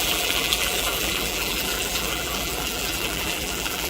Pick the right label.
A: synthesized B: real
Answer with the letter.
A